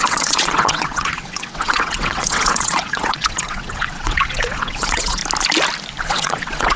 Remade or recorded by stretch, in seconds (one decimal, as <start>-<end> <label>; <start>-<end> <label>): 0.0-5.2 remade; 5.2-6.0 recorded; 6.0-6.8 remade